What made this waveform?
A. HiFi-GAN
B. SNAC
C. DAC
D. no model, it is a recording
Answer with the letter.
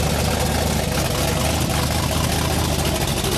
D